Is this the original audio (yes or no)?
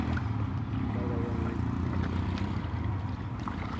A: yes